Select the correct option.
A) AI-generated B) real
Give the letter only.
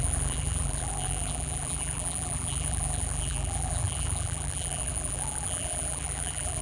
A